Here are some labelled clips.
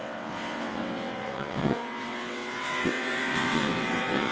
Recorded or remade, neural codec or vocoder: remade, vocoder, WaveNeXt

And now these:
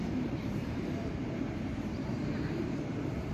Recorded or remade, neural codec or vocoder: remade, vocoder, BigVGAN v2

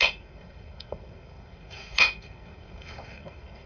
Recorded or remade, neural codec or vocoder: remade, codec, SNAC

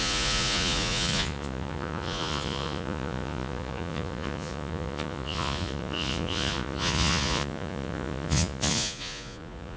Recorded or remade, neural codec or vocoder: remade, vocoder, Vocos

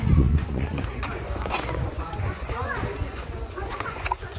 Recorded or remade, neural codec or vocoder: remade, vocoder, Vocos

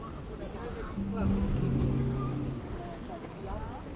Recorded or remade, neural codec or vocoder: recorded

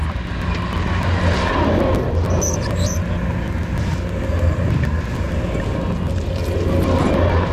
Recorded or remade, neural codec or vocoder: recorded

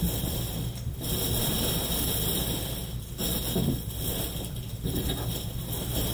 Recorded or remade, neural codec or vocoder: recorded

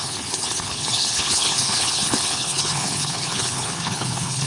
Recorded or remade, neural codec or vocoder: remade, codec, HILCodec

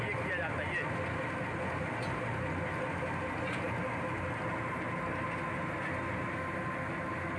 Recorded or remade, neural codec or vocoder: recorded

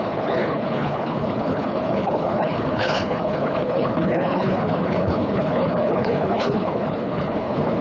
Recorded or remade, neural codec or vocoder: remade, codec, HILCodec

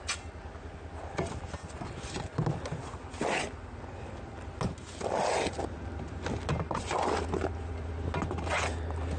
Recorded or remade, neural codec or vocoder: recorded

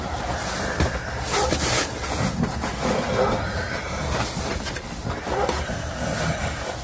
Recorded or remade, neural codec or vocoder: recorded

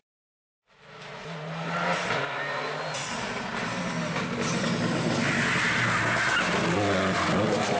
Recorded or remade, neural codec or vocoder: recorded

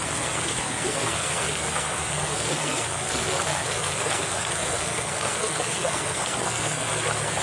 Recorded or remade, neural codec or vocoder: remade, codec, SNAC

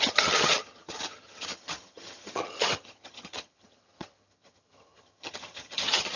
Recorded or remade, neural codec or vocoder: remade, vocoder, HiFi-GAN